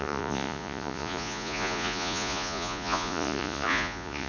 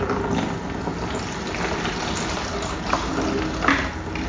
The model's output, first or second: first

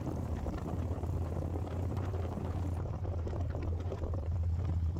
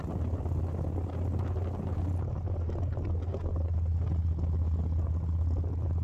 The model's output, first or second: first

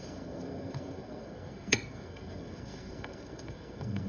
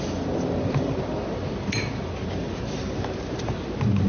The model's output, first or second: first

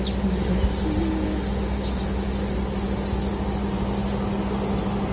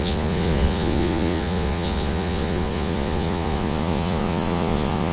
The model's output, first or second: second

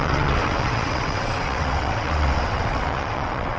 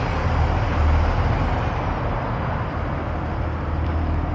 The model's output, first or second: first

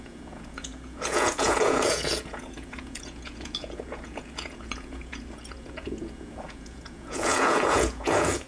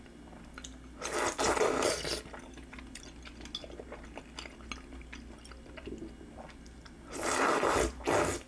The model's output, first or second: first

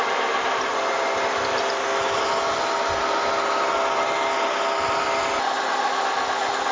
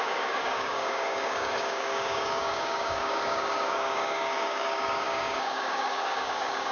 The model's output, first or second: second